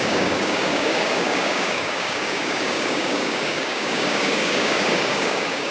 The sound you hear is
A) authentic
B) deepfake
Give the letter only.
B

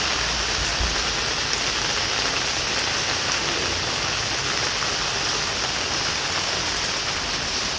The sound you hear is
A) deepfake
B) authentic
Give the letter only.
B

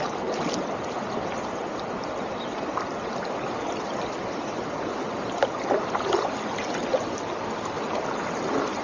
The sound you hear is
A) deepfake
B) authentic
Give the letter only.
B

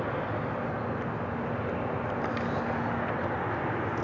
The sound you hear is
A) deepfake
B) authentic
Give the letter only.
B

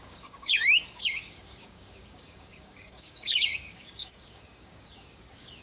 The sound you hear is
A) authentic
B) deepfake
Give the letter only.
B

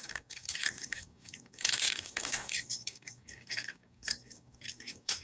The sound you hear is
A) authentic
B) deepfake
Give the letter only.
B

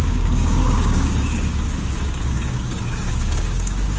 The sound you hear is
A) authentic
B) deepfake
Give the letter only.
B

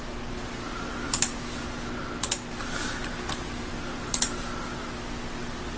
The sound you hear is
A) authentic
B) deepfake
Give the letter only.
A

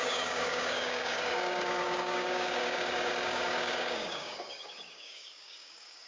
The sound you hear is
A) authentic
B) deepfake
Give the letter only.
B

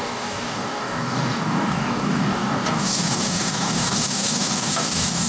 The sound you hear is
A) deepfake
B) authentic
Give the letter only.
A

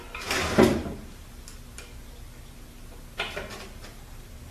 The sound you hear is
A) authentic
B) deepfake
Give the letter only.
A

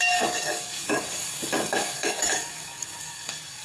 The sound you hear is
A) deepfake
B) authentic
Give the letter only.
A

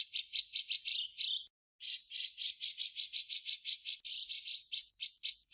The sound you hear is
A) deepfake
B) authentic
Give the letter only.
B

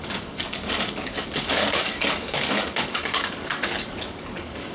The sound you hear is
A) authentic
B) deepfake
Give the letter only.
B